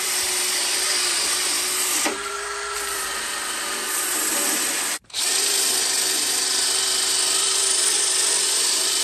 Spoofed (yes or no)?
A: yes